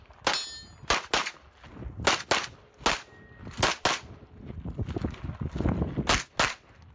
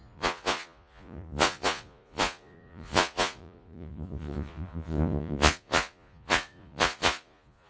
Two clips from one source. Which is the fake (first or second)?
second